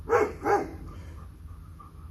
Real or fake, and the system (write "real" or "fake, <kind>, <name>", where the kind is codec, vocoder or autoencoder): real